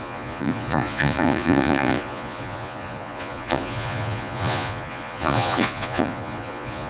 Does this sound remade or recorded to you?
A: remade